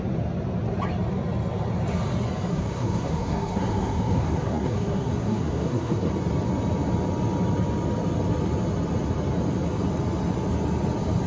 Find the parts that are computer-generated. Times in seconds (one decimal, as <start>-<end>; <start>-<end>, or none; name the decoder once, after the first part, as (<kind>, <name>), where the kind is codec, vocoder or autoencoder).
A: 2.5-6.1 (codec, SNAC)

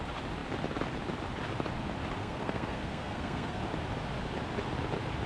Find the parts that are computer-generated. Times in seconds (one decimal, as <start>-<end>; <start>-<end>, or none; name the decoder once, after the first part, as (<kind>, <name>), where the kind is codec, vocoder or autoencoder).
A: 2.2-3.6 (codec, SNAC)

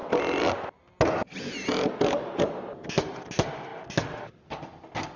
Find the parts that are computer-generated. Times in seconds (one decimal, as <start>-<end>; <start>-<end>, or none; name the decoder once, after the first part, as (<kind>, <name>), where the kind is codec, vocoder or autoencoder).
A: none

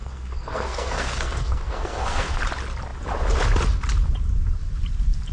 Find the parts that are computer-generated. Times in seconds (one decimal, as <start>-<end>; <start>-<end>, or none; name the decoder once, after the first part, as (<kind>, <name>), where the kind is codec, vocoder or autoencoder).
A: 0.0-2.4 (codec, SNAC)

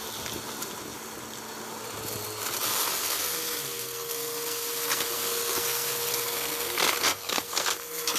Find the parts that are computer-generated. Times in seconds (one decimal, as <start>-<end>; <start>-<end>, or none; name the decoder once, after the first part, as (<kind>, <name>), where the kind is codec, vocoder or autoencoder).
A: 3.0-8.2 (codec, SNAC)

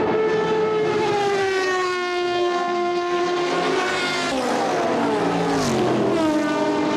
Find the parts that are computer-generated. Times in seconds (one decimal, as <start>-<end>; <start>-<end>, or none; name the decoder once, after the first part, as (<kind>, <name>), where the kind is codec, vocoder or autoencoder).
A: 1.4-3.2 (codec, SNAC)